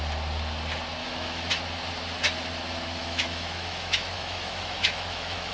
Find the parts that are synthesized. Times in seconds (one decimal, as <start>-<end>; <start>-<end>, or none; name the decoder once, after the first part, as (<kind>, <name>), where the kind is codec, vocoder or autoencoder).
1.0-1.5 (autoencoder, DAC-VAE); 3.0-5.5